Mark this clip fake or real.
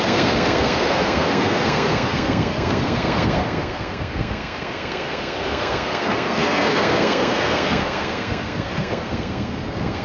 fake